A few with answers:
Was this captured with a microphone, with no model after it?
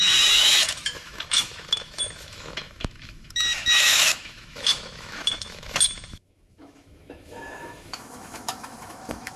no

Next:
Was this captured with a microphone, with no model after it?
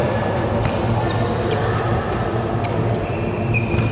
no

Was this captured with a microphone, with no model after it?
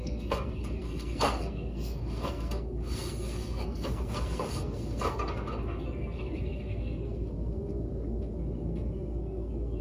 no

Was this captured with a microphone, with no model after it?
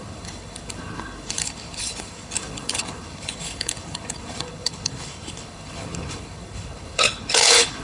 no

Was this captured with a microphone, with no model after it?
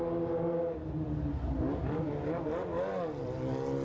yes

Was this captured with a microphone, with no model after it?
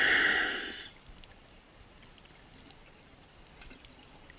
yes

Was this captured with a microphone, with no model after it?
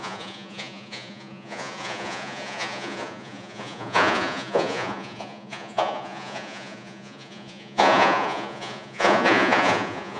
no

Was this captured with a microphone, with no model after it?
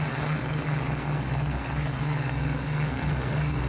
no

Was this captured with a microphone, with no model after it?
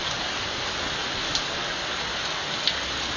yes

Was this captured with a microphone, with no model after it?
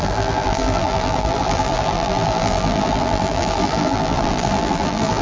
no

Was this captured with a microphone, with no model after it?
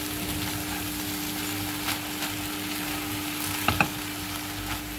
yes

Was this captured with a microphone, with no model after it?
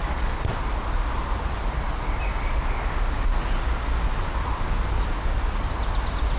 yes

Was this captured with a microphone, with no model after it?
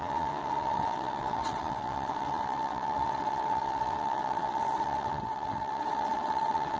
no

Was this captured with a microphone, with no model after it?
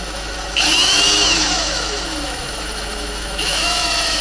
no